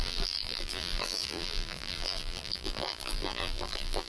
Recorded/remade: remade